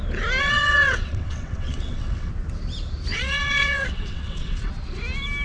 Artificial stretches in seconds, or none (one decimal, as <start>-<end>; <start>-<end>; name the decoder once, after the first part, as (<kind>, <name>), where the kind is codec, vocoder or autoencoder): 0.4-2.3 (vocoder, WaveNeXt); 3.1-4.7